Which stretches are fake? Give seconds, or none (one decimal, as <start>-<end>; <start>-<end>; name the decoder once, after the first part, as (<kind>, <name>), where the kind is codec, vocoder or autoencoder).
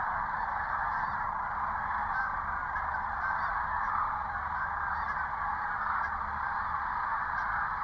none